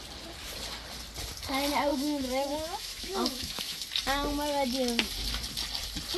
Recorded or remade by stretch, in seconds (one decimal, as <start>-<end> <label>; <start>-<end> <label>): 0.0-1.9 recorded; 1.9-3.8 remade; 3.8-6.2 recorded